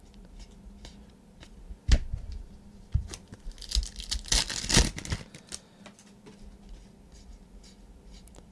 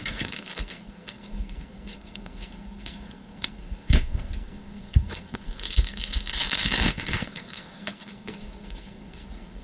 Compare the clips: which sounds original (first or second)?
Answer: first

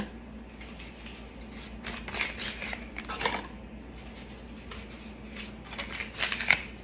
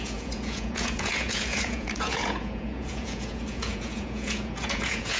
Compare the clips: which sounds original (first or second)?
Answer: first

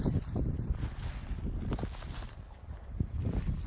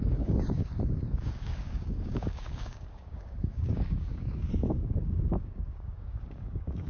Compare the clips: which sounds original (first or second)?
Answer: first